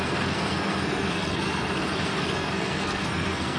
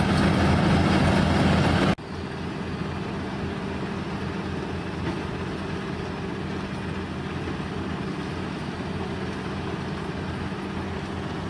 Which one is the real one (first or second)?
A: second